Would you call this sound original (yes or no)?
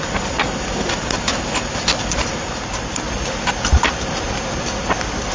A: yes